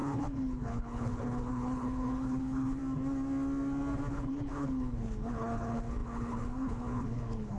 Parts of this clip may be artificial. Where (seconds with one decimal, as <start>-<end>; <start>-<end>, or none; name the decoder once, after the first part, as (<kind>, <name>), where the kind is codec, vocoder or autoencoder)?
0.0-2.8 (codec, HILCodec); 4.1-7.6